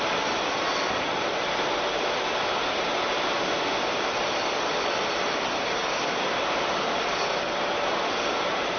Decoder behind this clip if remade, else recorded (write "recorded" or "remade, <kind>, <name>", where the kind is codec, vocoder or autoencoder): recorded